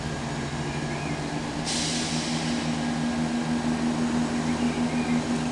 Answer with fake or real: real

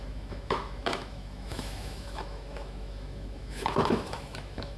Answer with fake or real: fake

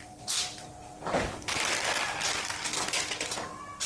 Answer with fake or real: real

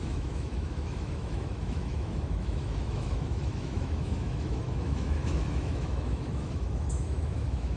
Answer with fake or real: fake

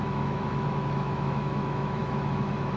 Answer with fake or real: fake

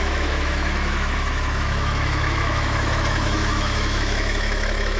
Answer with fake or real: fake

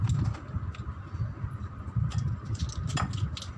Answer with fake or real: real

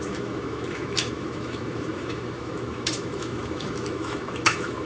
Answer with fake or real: fake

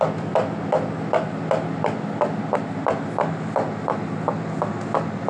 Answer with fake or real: real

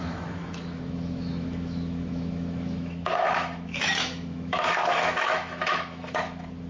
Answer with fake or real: fake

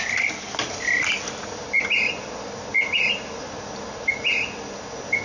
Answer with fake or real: real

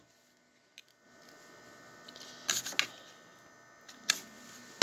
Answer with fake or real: real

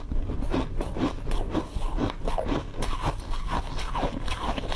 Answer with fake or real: real